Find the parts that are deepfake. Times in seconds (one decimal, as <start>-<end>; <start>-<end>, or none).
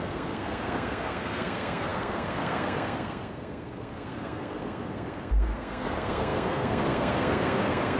0.0-8.0